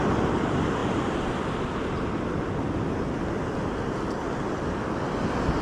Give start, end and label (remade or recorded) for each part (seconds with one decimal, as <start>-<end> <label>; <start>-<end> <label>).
0.0-5.6 recorded